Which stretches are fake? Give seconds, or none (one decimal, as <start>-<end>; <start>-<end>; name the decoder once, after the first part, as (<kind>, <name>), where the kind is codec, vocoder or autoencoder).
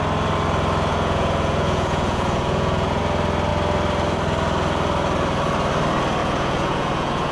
0.9-3.0 (vocoder, Vocos); 6.2-7.3